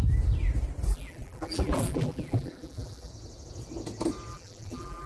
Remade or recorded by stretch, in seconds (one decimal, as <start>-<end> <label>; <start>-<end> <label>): 0.0-0.9 recorded; 0.9-3.1 remade; 3.1-4.3 recorded; 4.3-5.1 remade